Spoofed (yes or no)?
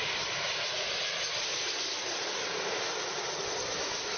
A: no